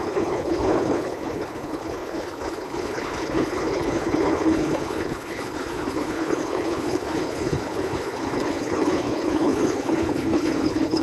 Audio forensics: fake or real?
fake